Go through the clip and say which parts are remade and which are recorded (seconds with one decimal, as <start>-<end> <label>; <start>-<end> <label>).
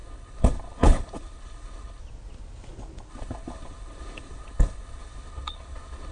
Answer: 0.0-2.0 remade; 2.0-3.1 recorded; 3.1-6.1 remade